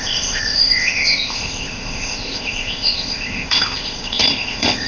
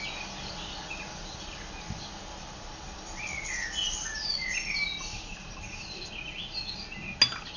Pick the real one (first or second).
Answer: second